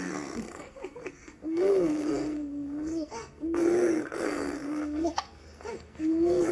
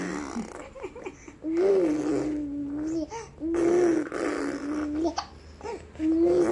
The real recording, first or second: second